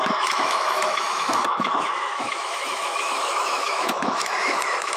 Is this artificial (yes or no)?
yes